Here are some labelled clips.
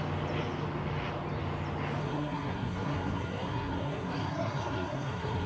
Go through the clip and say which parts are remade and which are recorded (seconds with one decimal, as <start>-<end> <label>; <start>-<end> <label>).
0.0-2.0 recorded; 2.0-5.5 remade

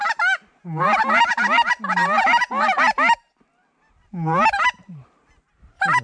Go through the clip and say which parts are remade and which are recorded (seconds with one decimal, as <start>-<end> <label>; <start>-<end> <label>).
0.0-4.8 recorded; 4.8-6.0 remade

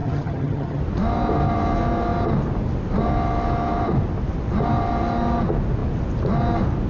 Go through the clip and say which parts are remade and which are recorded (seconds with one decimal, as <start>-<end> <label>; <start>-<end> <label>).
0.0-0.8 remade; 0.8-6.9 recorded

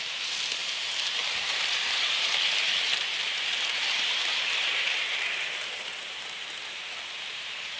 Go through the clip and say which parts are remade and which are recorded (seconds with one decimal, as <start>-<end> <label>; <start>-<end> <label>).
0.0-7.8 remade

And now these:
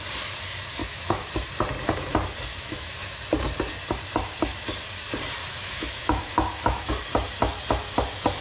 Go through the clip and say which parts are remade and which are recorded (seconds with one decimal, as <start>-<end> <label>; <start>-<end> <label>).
0.0-0.8 recorded; 0.8-1.3 remade; 1.3-2.5 recorded; 2.5-3.2 remade; 3.2-5.4 recorded; 5.4-6.9 remade; 6.9-8.4 recorded

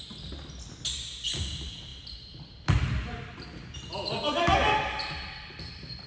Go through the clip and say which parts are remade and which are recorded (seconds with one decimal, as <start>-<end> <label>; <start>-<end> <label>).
0.0-6.1 recorded

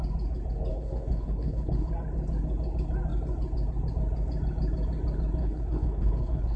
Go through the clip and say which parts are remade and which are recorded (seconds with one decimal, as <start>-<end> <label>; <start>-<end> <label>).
0.0-0.7 recorded; 0.7-1.9 remade; 1.9-5.4 recorded; 5.4-6.6 remade